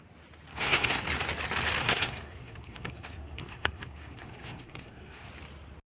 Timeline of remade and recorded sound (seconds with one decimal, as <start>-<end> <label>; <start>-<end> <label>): 0.0-0.5 recorded; 0.5-1.0 remade; 1.0-1.8 recorded; 1.8-5.3 remade; 5.3-5.9 recorded